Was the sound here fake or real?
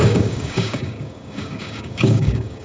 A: fake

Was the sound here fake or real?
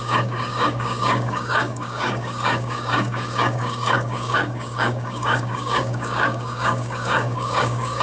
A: fake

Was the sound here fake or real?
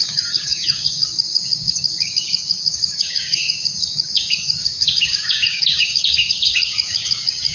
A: fake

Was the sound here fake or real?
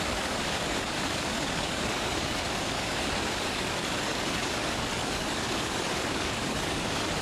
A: fake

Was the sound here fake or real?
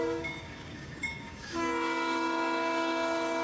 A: fake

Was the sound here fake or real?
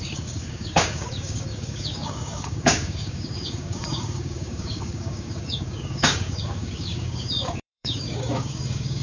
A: fake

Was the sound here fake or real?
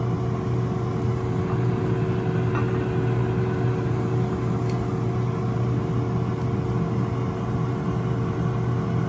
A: real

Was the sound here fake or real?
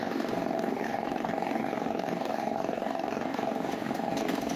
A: fake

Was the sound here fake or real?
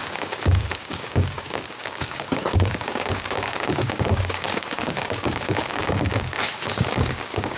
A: fake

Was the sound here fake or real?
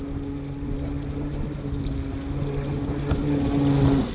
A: real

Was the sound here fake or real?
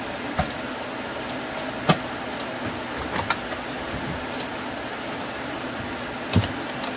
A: real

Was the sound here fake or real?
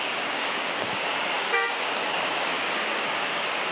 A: fake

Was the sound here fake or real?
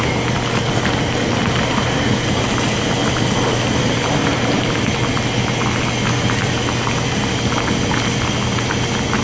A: real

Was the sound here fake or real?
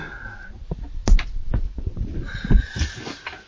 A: real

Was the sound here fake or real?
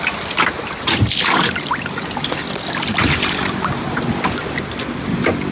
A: real